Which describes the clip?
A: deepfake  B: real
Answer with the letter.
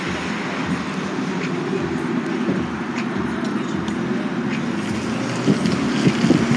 B